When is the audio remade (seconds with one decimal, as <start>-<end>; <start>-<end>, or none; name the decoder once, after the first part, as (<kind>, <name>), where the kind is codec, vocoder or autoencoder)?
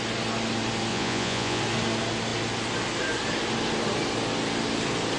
0.9-1.6 (vocoder, Vocos)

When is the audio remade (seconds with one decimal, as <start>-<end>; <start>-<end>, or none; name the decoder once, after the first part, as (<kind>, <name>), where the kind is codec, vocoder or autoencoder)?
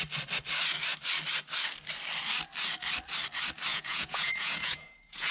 3.7-5.3 (vocoder, Vocos)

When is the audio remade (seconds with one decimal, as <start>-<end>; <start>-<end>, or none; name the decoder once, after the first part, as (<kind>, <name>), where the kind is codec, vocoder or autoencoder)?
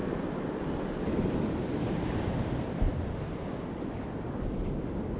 none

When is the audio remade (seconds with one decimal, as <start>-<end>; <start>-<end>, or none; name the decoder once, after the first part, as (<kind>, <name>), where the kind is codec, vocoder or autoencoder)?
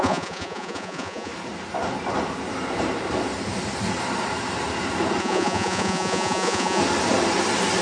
0.0-1.3 (vocoder, Vocos); 5.2-6.8